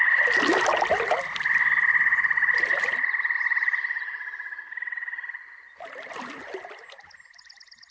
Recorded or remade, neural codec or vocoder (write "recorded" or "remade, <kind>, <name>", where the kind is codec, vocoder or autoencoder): recorded